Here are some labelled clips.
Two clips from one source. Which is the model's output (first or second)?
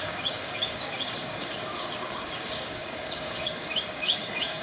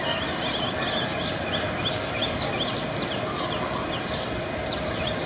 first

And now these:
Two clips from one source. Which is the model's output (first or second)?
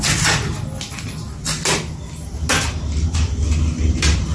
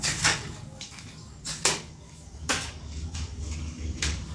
second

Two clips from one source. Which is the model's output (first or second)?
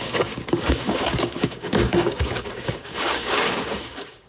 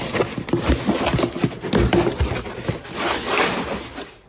first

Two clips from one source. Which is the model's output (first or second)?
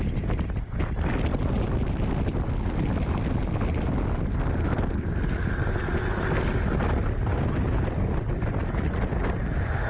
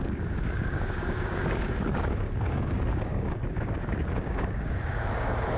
second